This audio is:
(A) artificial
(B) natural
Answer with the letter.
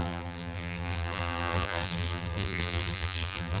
A